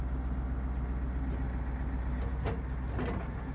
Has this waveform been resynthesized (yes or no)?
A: no